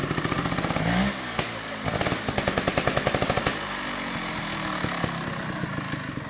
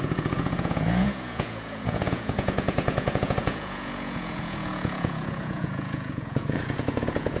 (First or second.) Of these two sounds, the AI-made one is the second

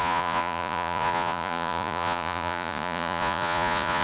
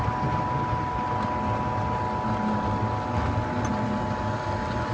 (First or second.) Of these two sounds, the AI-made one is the first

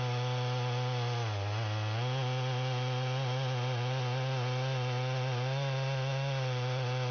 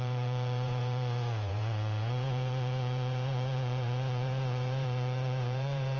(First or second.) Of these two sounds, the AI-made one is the second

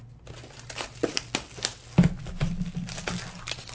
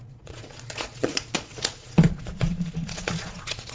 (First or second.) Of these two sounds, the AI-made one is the second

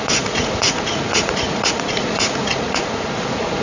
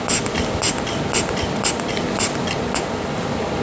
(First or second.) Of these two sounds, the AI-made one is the first